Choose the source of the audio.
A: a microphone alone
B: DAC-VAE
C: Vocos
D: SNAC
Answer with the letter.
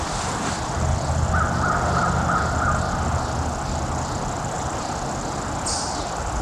A